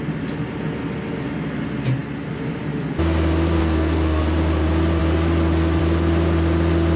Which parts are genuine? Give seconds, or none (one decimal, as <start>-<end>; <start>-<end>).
0.0-3.6; 4.2-7.0